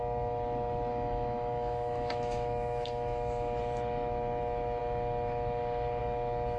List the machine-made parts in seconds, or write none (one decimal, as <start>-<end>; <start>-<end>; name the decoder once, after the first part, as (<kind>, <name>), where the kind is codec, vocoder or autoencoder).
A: 0.9-3.6 (autoencoder, DAC-VAE)